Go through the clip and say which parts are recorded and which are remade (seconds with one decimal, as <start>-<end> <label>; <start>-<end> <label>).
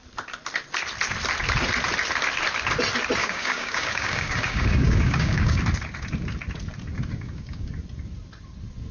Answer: 0.0-3.2 recorded; 3.2-5.6 remade; 5.6-7.1 recorded; 7.1-7.7 remade; 7.7-8.9 recorded